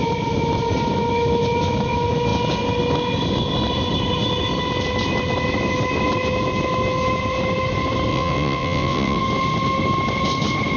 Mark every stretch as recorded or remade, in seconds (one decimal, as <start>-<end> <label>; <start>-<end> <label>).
0.0-8.1 recorded; 8.1-9.2 remade; 9.2-10.8 recorded